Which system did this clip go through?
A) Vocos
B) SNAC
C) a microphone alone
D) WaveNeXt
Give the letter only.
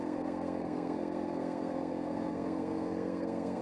B